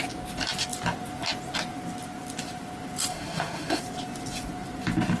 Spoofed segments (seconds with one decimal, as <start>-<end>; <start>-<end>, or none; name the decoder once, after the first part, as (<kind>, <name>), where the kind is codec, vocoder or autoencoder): 3.1-3.8 (autoencoder, DAC-VAE)